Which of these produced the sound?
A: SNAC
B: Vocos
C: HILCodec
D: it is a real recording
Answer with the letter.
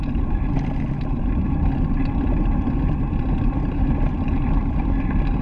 D